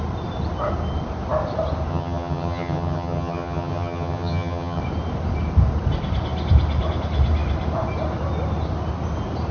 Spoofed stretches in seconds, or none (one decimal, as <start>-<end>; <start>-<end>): 1.9-4.8